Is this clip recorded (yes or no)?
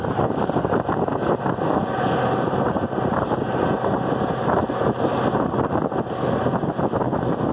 yes